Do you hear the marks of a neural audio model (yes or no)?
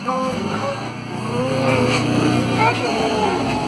yes